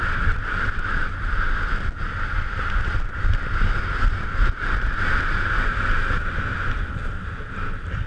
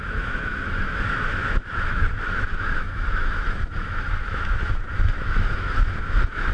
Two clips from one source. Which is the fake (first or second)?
second